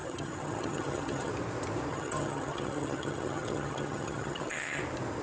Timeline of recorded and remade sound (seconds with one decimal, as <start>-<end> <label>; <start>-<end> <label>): 0.0-1.3 remade; 1.3-1.9 recorded; 1.9-4.8 remade; 4.8-5.2 recorded